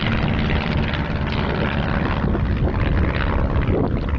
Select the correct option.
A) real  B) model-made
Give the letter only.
A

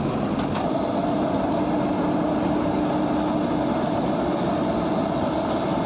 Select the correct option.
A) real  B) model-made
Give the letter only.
A